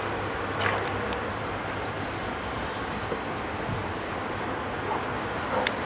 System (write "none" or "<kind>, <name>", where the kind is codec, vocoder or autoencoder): none